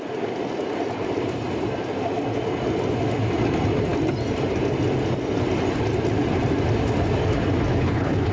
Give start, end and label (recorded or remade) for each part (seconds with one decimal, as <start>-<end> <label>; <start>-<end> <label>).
0.0-7.7 recorded; 7.7-8.3 remade